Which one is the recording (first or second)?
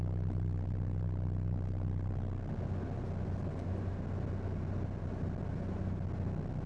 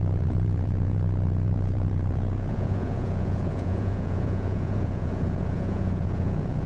first